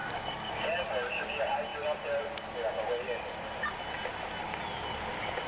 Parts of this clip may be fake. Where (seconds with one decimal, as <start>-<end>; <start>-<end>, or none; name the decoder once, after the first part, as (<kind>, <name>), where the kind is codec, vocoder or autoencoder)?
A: 0.0-0.5 (codec, DAC)